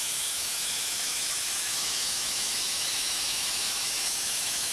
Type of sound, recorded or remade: remade